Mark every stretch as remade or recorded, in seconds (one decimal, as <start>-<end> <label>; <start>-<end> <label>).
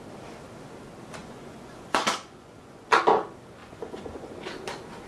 0.0-1.2 recorded; 1.2-3.0 remade; 3.0-3.6 recorded; 3.6-4.4 remade; 4.4-5.1 recorded